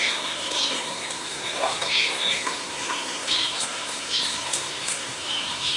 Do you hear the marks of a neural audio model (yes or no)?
yes